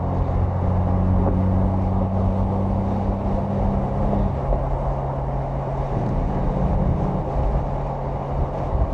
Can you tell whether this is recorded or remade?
recorded